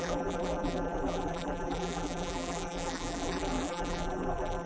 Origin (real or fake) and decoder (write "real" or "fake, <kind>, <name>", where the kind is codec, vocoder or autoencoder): fake, vocoder, BigVGAN v2